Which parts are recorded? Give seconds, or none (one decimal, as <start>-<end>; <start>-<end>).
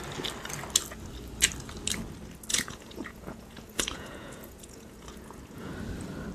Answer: 0.0-2.5; 5.7-6.3